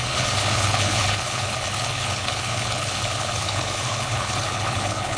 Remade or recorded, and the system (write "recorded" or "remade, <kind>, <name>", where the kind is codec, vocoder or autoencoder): remade, codec, HILCodec